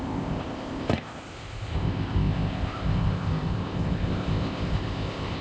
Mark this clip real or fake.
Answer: fake